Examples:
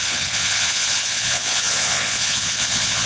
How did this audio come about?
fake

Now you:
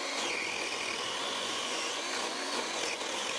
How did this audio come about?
fake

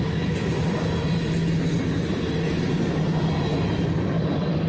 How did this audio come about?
real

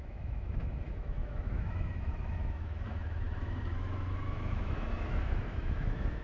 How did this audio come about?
fake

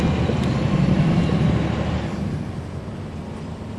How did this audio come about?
real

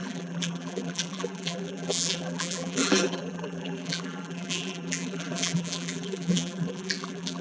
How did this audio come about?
fake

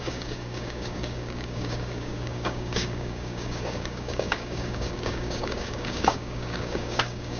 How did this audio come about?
fake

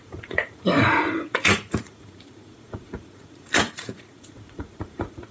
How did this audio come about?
fake